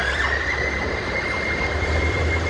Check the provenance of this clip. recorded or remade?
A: remade